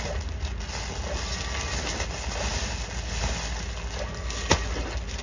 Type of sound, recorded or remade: recorded